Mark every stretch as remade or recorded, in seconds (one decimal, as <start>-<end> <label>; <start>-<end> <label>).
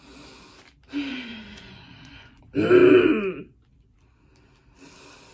0.0-1.1 recorded; 1.1-2.4 remade; 2.4-5.3 recorded